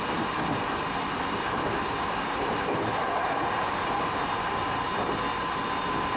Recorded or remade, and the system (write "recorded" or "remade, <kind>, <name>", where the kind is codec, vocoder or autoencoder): recorded